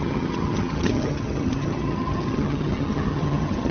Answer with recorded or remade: remade